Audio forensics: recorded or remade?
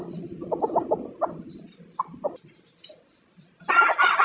recorded